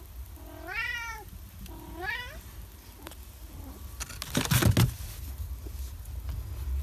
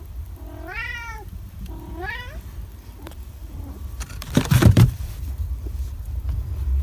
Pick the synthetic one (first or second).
second